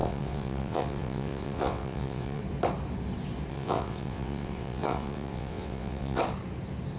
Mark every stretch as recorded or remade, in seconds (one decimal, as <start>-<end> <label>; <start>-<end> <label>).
0.0-2.4 remade; 2.4-3.5 recorded; 3.5-6.2 remade; 6.2-7.0 recorded